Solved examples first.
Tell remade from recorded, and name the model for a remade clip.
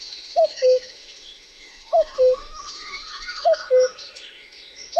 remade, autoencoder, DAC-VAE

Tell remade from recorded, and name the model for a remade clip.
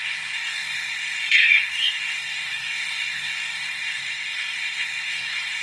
remade, codec, SNAC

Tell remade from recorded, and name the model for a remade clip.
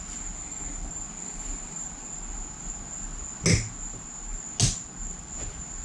recorded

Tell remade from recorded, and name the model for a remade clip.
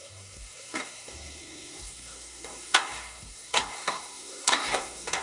remade, codec, SNAC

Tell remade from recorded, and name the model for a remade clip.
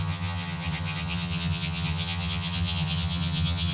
remade, vocoder, HiFi-GAN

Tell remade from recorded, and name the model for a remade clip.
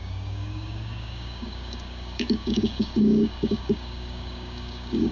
remade, codec, DAC